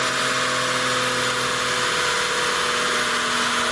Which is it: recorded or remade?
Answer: recorded